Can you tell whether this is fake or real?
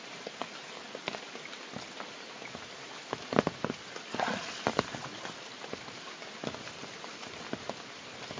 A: real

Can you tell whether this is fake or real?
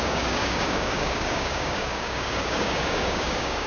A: fake